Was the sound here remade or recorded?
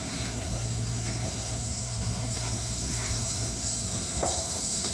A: remade